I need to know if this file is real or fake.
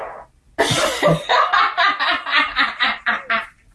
real